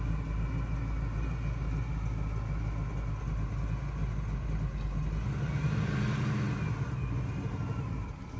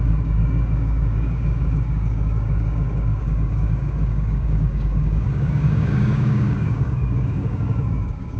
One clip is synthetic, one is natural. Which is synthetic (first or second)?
second